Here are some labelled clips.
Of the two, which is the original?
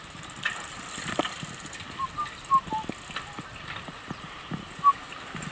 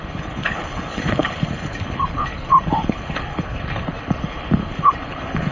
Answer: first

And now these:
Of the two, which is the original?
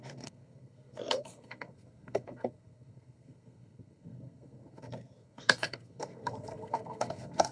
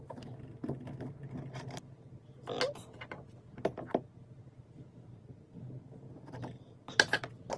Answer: second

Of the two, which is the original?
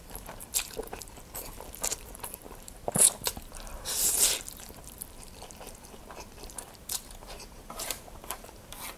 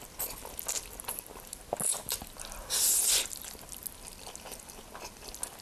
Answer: second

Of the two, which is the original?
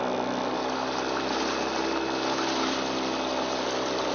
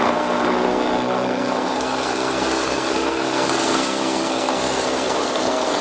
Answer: first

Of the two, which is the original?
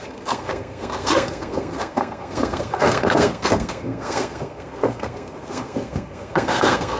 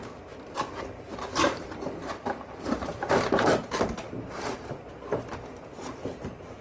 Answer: second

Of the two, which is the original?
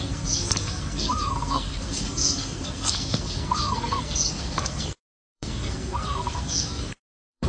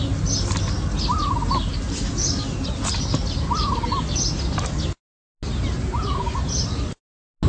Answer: second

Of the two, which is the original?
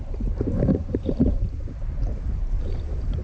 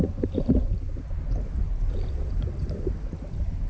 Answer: second